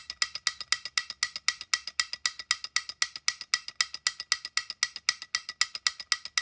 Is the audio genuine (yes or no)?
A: yes